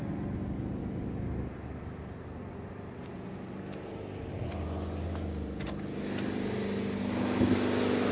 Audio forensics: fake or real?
real